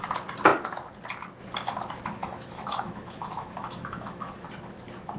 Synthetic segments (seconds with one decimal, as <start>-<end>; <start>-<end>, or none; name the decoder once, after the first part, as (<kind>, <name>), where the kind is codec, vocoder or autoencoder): 2.2-4.5 (autoencoder, DAC-VAE)